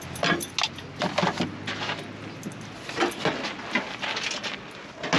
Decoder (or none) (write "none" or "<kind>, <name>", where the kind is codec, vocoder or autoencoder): none